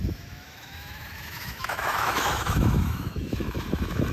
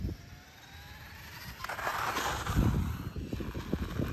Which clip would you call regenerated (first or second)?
first